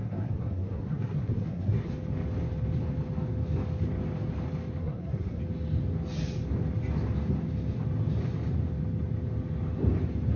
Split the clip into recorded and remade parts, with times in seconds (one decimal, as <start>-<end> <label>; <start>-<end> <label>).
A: 0.0-1.9 remade; 1.9-4.8 recorded; 4.8-5.4 remade; 5.4-10.4 recorded